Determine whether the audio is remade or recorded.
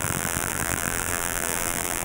remade